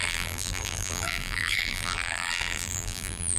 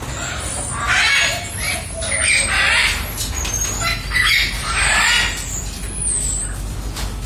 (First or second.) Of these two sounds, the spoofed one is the first